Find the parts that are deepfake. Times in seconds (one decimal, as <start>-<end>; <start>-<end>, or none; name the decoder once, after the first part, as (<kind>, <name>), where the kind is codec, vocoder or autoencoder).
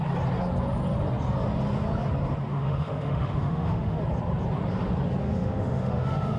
2.5-4.0 (autoencoder, DAC-VAE); 5.2-6.4